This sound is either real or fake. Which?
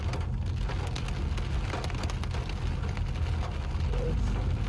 real